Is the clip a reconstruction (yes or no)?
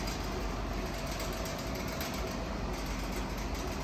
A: no